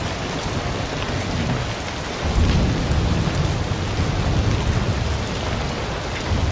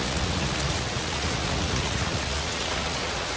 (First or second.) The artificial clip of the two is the second